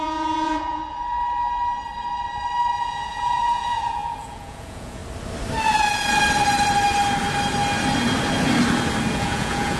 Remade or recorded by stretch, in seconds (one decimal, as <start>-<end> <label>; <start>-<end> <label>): 0.0-0.8 remade; 0.8-2.8 recorded; 2.8-5.0 remade; 5.0-9.1 recorded; 9.1-9.8 remade